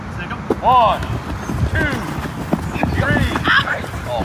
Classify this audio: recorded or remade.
recorded